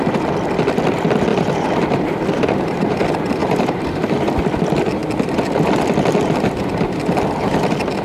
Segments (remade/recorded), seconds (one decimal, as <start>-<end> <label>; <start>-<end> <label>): 0.0-1.3 recorded; 1.3-3.0 remade; 3.0-3.4 recorded; 3.4-4.3 remade; 4.3-8.0 recorded